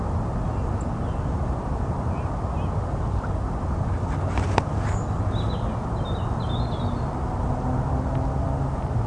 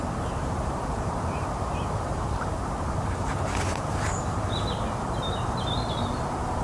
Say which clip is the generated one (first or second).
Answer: second